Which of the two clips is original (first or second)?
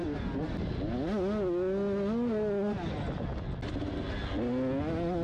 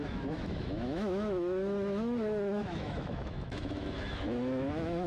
first